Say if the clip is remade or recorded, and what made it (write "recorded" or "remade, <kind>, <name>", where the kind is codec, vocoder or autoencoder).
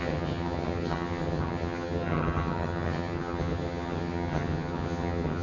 remade, vocoder, HiFi-GAN